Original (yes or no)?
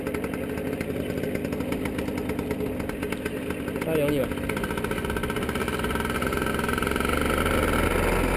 yes